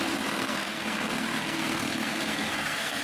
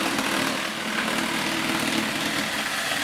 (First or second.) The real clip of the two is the second